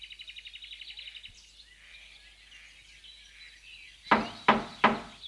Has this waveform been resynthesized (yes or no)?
no